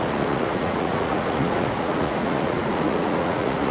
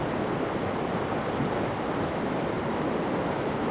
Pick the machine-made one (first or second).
first